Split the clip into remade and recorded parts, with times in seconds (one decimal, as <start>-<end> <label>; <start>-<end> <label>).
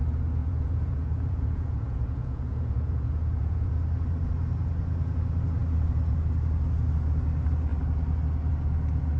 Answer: 0.0-0.4 recorded; 0.4-3.7 remade; 3.7-9.2 recorded